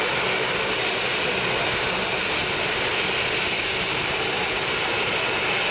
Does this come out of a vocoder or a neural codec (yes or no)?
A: no